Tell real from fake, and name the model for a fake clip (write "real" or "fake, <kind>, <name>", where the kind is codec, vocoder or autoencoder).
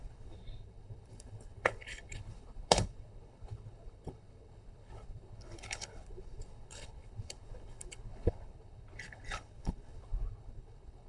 fake, codec, HILCodec